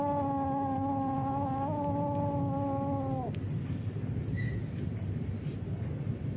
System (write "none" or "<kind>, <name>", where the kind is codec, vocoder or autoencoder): none